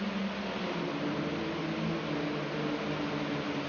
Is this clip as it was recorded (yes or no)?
yes